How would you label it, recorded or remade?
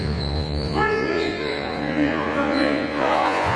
remade